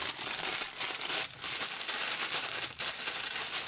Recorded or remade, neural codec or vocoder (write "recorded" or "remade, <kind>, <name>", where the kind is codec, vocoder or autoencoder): remade, vocoder, BigVGAN v2